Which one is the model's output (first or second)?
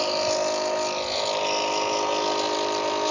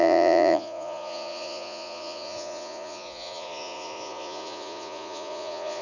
second